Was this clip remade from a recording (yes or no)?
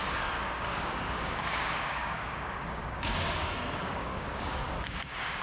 yes